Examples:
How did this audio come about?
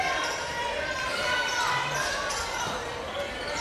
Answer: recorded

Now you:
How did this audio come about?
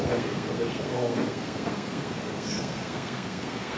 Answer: remade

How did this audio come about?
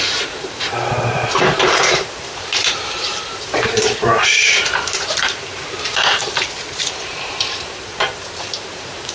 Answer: remade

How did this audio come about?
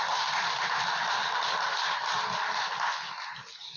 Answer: recorded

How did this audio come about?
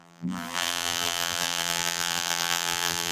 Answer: remade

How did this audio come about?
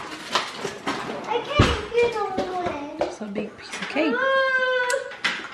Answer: recorded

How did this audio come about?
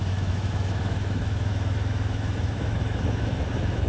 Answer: remade